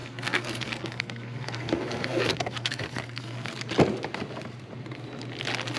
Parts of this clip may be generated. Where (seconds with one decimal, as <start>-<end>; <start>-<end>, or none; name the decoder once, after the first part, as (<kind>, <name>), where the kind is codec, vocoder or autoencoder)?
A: 0.0-3.5 (codec, SNAC)